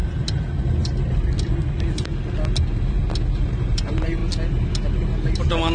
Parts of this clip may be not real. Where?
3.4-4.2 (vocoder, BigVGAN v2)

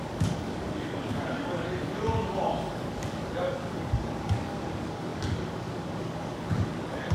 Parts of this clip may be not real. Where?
0.0-7.1 (codec, DAC)

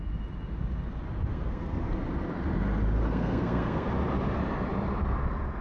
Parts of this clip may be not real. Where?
1.3-1.8 (codec, SNAC); 3.0-3.9